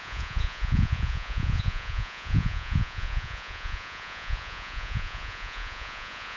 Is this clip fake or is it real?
fake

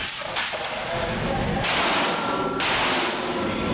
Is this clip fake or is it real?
real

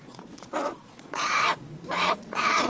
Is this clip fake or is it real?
fake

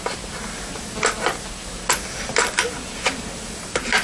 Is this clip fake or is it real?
real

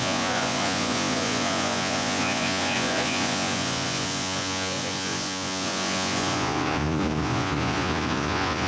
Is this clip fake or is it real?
fake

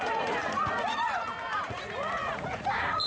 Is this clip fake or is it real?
fake